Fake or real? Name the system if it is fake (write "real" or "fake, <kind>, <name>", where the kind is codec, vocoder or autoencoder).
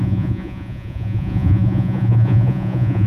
fake, vocoder, Vocos